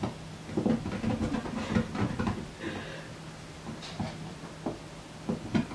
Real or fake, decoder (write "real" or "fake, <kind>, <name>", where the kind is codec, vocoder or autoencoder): real